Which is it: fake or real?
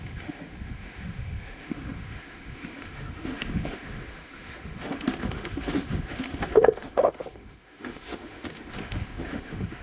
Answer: fake